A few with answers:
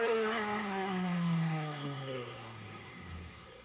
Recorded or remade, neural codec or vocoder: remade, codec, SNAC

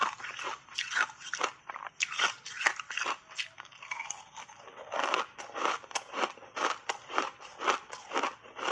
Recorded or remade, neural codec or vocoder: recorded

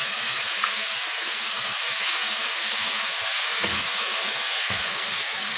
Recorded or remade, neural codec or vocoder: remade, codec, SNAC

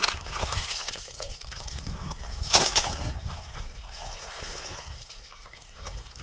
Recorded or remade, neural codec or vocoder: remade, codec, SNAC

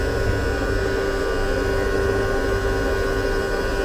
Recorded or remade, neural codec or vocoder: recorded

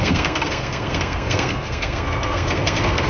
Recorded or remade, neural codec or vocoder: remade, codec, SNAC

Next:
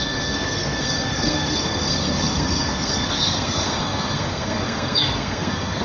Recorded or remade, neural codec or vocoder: remade, codec, SNAC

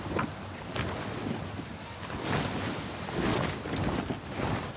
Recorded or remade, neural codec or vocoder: recorded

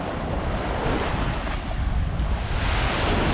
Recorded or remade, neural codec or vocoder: recorded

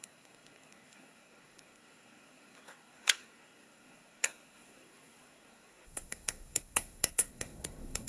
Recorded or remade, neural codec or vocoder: remade, codec, SNAC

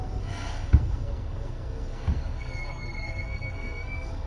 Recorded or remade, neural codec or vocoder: remade, codec, SNAC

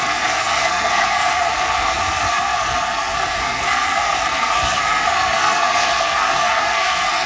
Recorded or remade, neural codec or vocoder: remade, codec, SNAC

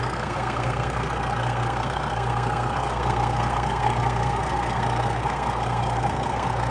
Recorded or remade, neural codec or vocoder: remade, codec, SNAC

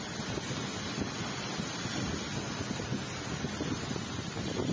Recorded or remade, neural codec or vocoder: recorded